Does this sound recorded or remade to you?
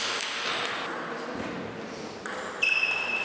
recorded